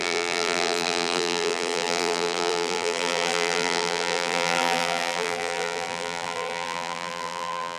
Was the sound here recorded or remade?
remade